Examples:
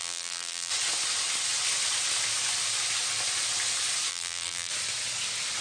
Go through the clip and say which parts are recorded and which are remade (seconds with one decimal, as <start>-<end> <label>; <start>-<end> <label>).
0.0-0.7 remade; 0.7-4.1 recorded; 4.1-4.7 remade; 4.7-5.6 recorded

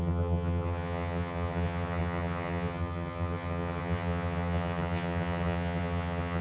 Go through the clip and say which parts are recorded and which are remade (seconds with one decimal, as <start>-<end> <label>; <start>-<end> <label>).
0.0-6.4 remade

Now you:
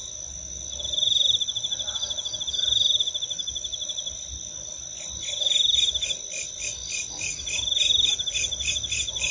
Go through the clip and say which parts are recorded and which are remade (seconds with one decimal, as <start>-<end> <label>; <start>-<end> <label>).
0.0-9.3 recorded